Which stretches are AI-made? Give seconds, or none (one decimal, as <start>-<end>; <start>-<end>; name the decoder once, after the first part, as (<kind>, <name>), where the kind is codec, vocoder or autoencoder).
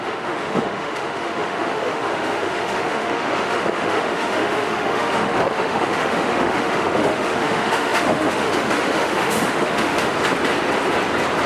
0.0-10.1 (autoencoder, DAC-VAE)